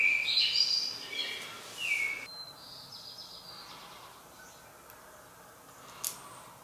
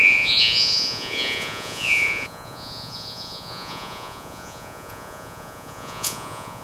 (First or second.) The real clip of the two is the first